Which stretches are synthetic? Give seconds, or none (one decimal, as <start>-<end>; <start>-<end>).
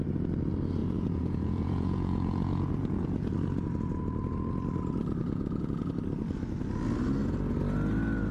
0.8-3.3; 5.2-5.9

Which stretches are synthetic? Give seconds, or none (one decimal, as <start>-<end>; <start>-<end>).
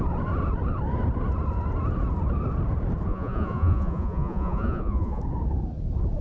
3.1-5.2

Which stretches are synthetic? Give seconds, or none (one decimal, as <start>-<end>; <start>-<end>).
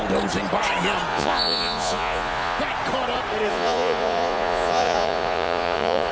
1.1-2.6; 3.5-6.1